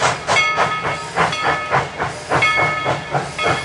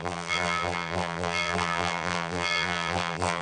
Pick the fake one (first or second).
second